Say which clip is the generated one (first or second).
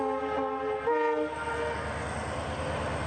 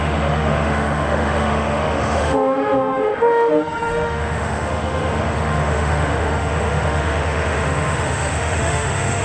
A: second